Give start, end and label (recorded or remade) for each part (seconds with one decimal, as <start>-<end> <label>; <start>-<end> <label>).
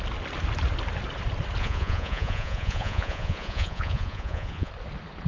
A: 0.0-1.6 recorded; 1.6-4.7 remade; 4.7-5.3 recorded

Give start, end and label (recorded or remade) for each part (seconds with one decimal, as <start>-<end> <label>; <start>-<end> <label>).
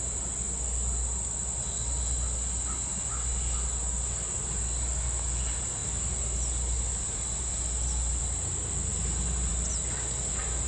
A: 0.0-10.7 recorded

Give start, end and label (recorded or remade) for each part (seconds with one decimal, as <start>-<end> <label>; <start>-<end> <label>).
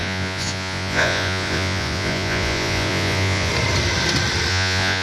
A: 0.0-3.5 remade; 3.5-4.5 recorded; 4.5-5.0 remade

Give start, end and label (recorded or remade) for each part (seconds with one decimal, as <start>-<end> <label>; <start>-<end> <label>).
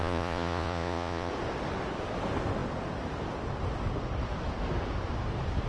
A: 0.0-1.3 remade; 1.3-5.7 recorded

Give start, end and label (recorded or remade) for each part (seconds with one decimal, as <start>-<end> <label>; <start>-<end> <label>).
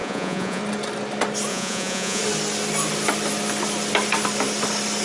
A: 0.0-0.6 remade; 0.6-1.5 recorded; 1.5-2.2 remade; 2.2-5.0 recorded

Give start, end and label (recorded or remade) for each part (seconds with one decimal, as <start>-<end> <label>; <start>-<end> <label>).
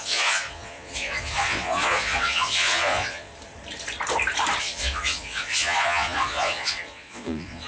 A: 0.0-3.3 remade; 3.3-4.6 recorded; 4.6-7.7 remade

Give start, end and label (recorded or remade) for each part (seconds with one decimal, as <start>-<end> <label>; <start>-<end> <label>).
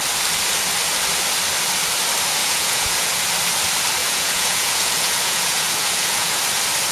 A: 0.0-2.4 recorded; 2.4-3.2 remade; 3.2-4.0 recorded; 4.0-6.4 remade; 6.4-6.9 recorded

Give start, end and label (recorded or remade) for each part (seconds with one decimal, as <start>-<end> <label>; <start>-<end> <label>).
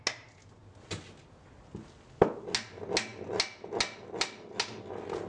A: 0.0-5.3 recorded